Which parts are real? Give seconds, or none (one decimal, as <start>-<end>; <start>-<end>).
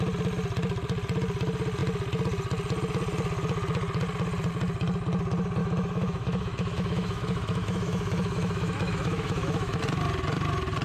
0.0-5.6; 9.8-10.8